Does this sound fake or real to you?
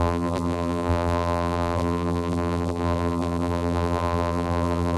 fake